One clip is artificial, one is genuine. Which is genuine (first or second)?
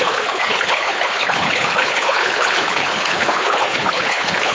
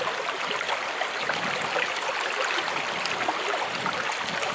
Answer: second